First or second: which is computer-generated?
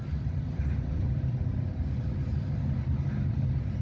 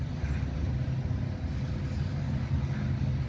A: first